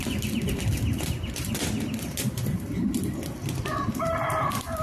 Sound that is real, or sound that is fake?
fake